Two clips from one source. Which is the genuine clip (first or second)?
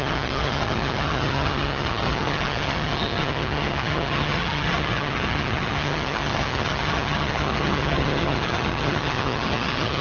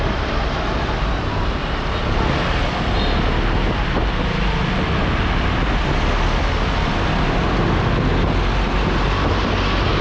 second